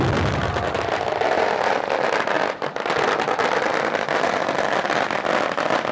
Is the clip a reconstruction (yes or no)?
no